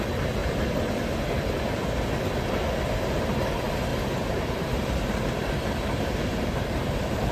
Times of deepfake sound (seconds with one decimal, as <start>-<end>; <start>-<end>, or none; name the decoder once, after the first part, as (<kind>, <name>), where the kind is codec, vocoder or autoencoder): 3.9-7.3 (vocoder, BigVGAN v2)